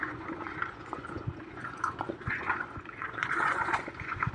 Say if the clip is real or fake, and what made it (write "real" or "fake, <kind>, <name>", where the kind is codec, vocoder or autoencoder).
fake, vocoder, Vocos